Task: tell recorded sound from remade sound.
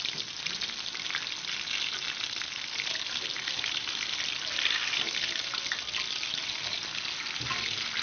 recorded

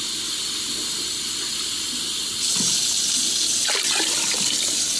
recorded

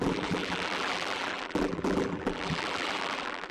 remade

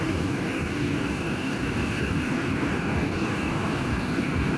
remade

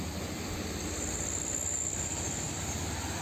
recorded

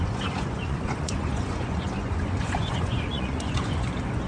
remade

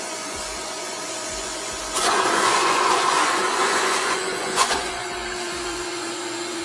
remade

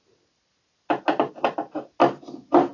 recorded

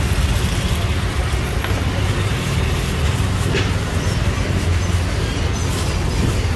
recorded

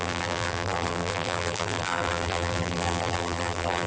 remade